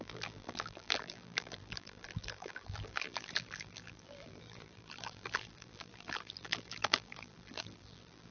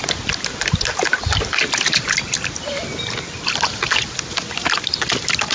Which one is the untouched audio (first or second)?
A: second